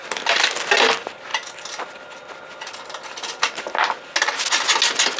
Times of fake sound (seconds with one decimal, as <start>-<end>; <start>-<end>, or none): none